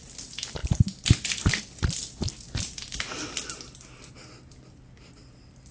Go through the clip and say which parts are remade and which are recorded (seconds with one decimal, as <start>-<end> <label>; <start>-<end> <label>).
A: 0.0-5.7 recorded